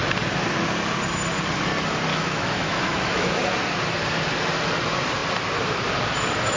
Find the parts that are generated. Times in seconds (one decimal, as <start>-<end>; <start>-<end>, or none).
2.1-3.4